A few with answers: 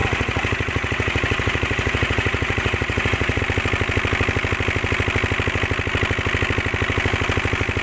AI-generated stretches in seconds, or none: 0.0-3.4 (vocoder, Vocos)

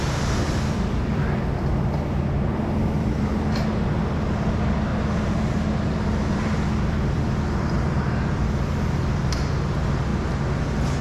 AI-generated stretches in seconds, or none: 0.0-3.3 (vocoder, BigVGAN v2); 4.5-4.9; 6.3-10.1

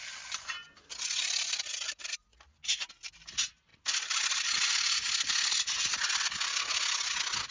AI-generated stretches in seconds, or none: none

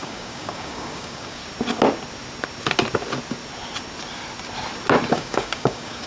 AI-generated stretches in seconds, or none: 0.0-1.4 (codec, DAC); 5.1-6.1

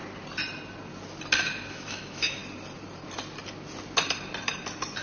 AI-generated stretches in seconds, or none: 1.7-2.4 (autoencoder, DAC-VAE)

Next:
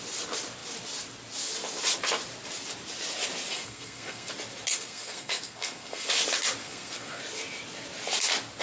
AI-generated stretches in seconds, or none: 3.5-4.3 (codec, SNAC); 4.7-6.1; 6.6-7.2

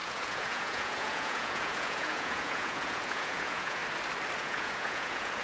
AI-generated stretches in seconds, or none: 0.0-3.8 (vocoder, Vocos); 4.4-5.4